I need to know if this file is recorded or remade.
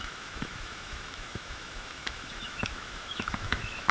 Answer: remade